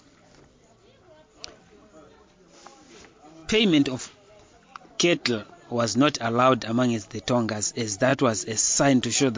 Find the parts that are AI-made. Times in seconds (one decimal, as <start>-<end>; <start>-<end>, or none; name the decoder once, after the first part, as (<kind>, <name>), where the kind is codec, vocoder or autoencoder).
3.4-4.0 (vocoder, Vocos); 4.5-5.5